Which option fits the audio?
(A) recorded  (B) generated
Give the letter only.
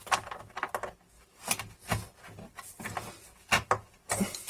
A